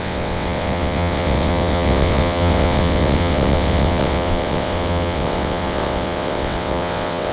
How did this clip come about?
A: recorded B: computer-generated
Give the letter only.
B